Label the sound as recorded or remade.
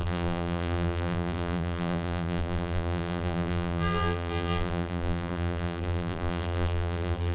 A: remade